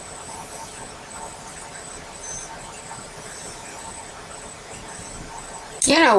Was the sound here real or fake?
real